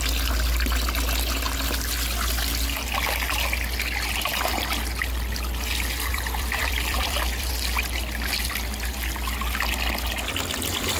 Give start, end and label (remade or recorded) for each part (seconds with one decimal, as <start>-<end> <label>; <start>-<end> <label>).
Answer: 0.0-6.1 recorded; 6.1-7.5 remade; 7.5-11.0 recorded